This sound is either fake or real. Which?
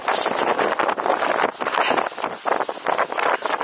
real